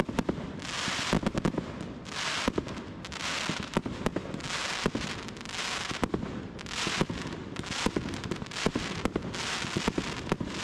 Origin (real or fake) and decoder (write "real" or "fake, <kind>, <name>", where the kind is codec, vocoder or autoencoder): real